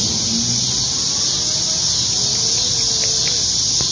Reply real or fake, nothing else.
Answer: real